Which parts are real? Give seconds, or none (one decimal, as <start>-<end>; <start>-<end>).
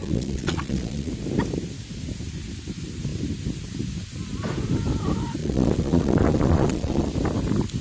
1.1-5.4; 7.1-7.8